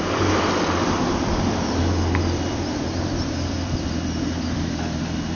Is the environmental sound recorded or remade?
remade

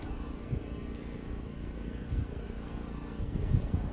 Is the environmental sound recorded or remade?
remade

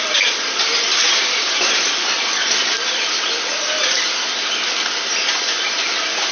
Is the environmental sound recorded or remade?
recorded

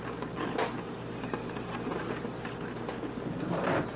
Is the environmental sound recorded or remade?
recorded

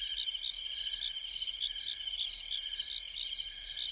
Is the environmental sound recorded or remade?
recorded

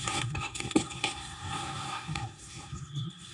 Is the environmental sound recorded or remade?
remade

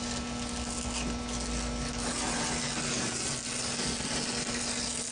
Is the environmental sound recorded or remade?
recorded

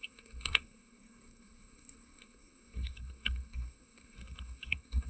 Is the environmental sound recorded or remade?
remade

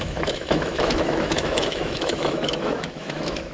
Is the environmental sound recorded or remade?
remade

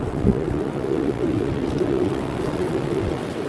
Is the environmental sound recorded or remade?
remade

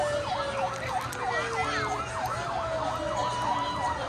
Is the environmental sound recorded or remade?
recorded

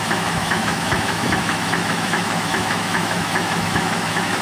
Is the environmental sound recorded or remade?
remade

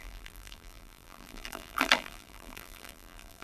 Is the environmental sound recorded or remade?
remade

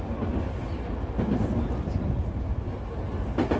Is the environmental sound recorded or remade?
recorded